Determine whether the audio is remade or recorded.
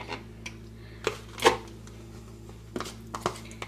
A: recorded